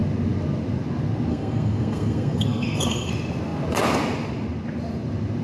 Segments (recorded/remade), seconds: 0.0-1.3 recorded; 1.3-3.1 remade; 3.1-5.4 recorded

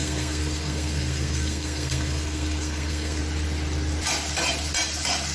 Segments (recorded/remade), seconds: 0.0-3.2 remade; 3.2-5.3 recorded